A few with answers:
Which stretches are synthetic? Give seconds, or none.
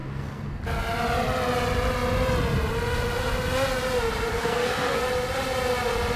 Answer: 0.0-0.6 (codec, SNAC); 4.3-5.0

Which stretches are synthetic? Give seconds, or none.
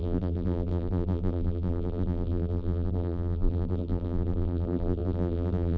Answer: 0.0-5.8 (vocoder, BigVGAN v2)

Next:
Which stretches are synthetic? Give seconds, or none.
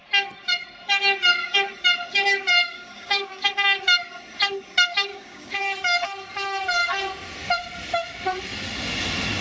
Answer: 2.6-3.5 (codec, DAC); 5.1-5.6